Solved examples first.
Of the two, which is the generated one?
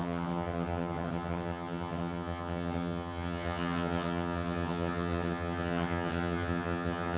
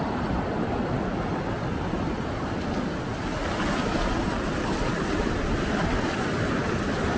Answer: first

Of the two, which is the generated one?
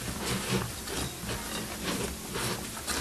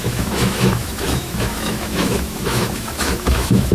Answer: second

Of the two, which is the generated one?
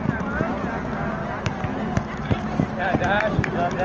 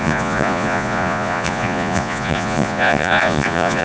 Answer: second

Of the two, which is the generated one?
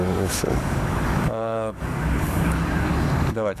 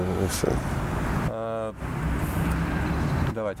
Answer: first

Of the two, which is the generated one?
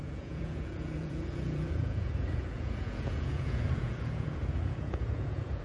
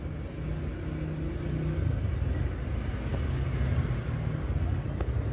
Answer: first